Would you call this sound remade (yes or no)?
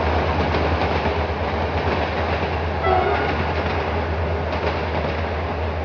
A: no